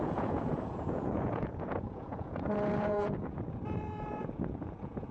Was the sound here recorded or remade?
remade